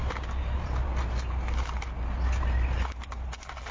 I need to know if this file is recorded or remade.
recorded